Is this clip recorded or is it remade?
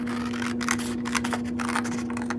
recorded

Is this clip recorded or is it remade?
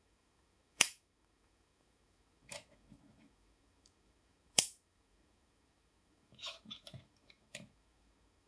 remade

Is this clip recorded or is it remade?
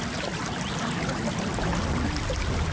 recorded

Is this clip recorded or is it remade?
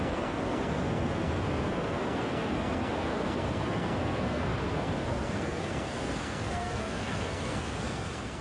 remade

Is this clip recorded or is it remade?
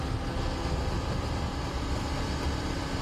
recorded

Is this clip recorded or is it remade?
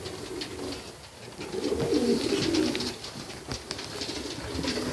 recorded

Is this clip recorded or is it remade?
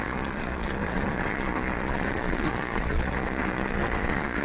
remade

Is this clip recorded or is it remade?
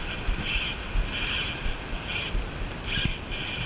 recorded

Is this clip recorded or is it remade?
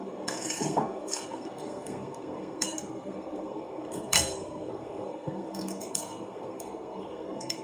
remade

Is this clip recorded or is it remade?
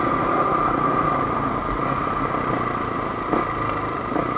recorded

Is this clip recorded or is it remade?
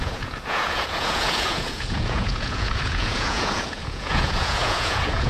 remade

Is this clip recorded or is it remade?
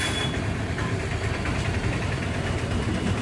recorded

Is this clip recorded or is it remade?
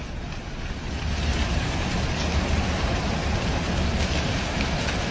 recorded